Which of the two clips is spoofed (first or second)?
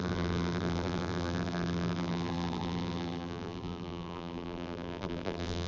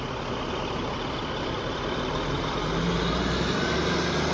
first